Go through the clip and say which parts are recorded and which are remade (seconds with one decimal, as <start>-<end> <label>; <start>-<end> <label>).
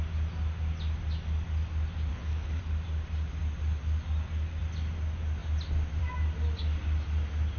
0.0-2.1 recorded; 2.1-2.6 remade; 2.6-7.6 recorded